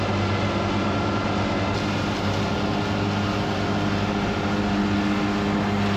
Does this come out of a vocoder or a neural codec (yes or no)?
no